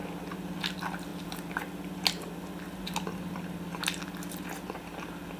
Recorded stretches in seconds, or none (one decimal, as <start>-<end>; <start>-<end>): 0.0-5.4